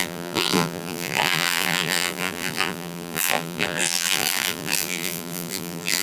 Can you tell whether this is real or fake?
fake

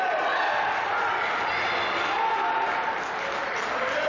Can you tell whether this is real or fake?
real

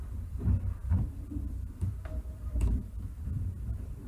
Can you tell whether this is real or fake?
fake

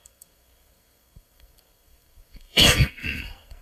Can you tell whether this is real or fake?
fake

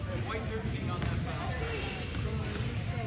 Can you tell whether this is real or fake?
real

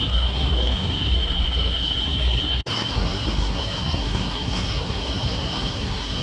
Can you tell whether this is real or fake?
fake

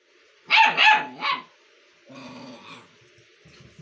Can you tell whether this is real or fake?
real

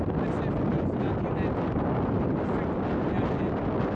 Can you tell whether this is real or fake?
real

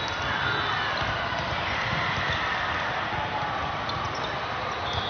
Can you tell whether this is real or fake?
real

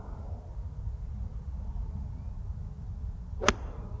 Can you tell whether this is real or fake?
real